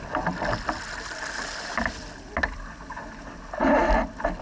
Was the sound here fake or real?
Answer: real